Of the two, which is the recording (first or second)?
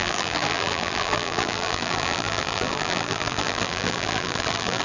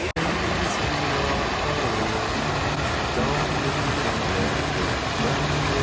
second